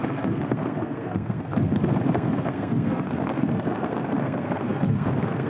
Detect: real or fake fake